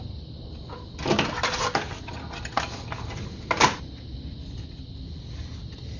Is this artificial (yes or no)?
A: no